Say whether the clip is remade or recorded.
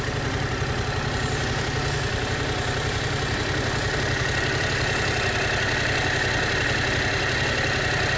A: recorded